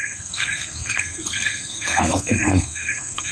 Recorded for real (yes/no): no